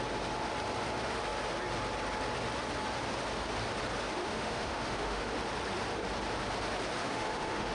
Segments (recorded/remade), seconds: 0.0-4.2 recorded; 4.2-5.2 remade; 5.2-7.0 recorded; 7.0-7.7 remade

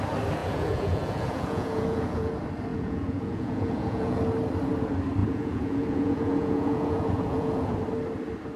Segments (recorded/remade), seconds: 0.0-0.4 recorded; 0.4-2.3 remade; 2.3-2.7 recorded; 2.7-4.2 remade; 4.2-5.2 recorded; 5.2-7.7 remade; 7.7-8.6 recorded

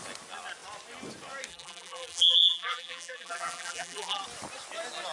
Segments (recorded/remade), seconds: 0.0-1.5 recorded; 1.5-4.2 remade; 4.2-5.1 recorded

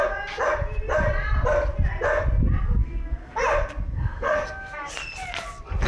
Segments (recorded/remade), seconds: 0.0-2.8 recorded; 2.8-3.4 remade; 3.4-3.9 recorded; 3.9-4.9 remade; 4.9-5.9 recorded

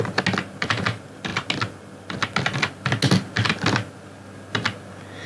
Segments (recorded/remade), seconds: 0.0-5.3 recorded

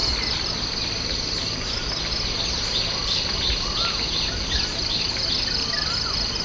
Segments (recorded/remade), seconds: 0.0-6.4 recorded

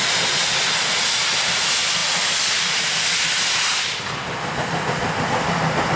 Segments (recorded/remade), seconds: 0.0-6.0 recorded

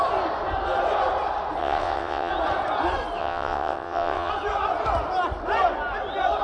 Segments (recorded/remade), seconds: 0.0-1.6 recorded; 1.6-2.3 remade; 2.3-3.2 recorded; 3.2-4.3 remade; 4.3-6.4 recorded